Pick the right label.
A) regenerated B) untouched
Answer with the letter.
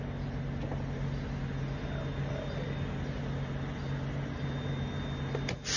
B